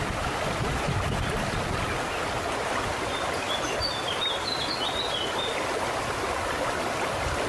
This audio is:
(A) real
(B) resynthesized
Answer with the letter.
A